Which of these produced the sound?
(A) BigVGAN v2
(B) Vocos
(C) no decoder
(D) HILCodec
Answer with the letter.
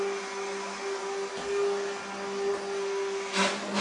C